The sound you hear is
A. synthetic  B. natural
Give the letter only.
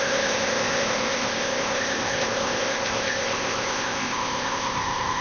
A